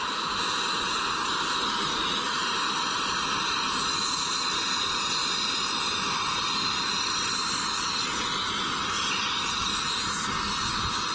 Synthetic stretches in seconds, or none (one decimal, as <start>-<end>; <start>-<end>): 2.4-3.6; 5.2-8.1

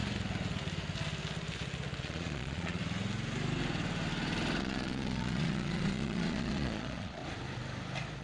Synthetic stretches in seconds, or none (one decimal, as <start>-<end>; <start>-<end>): 2.0-2.8; 4.6-7.2

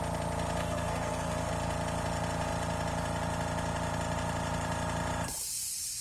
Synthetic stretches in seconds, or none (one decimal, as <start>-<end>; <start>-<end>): 0.6-1.5

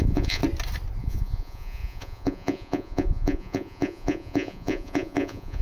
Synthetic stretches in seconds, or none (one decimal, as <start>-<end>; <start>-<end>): 0.0-0.4; 1.0-5.6

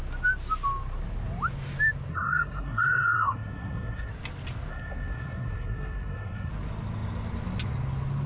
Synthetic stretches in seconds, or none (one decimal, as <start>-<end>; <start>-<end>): 2.1-4.1; 4.7-6.5

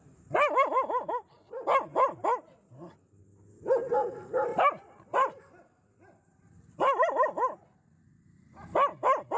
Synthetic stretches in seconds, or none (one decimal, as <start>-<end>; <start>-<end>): none

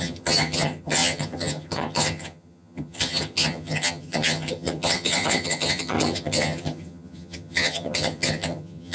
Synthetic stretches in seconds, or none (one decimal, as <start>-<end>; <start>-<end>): 0.0-8.9